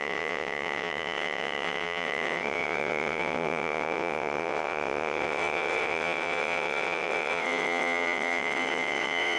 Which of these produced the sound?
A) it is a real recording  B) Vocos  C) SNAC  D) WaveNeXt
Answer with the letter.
D